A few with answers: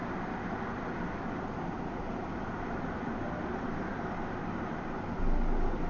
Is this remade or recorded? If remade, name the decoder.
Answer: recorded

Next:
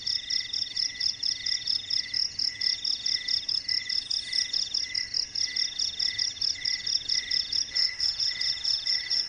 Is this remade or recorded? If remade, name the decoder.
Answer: recorded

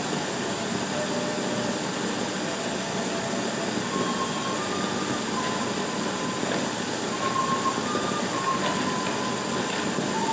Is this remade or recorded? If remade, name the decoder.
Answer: recorded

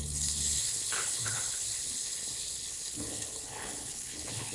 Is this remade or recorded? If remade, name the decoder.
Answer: remade, codec, HILCodec